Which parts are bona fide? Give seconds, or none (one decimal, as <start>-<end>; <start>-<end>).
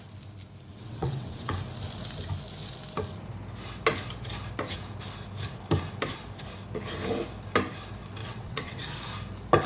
0.0-0.7; 1.5-8.2; 8.8-9.7